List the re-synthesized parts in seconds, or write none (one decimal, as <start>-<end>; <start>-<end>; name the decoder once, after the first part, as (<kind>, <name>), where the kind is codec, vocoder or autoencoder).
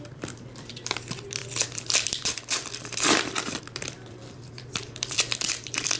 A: 0.0-6.0 (vocoder, BigVGAN v2)